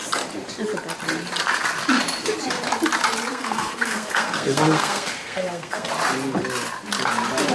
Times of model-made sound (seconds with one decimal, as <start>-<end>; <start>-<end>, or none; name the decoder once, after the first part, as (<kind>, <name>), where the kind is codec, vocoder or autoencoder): 3.3-5.9 (codec, SNAC)